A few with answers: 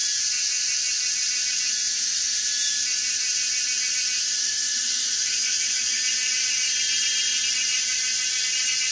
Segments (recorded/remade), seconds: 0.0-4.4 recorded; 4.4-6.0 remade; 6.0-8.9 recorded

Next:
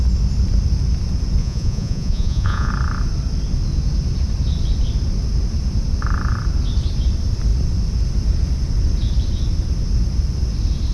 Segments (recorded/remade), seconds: 0.0-1.4 recorded; 1.4-2.7 remade; 2.7-10.9 recorded

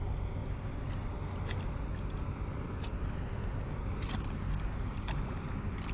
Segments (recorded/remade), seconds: 0.0-5.9 recorded

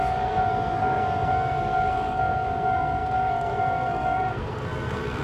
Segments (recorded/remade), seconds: 0.0-5.2 remade

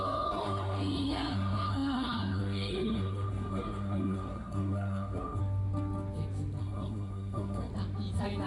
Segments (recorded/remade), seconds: 0.0-5.4 remade; 5.4-6.6 recorded; 6.6-7.7 remade; 7.7-8.5 recorded

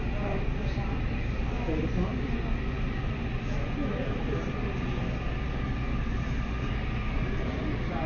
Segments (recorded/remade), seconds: 0.0-8.1 recorded

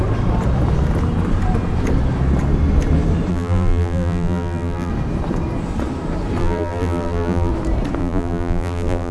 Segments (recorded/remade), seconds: 0.0-3.3 recorded; 3.3-4.9 remade; 4.9-6.4 recorded; 6.4-7.5 remade; 7.5-8.0 recorded; 8.0-9.1 remade